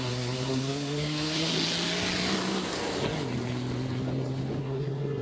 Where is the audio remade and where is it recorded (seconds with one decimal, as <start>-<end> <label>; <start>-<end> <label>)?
0.0-1.5 remade; 1.5-4.6 recorded; 4.6-5.2 remade